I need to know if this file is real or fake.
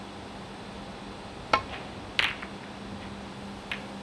real